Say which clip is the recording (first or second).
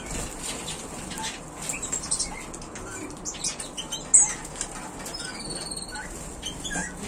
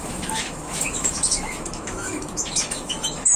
first